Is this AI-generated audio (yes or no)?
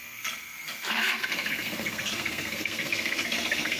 yes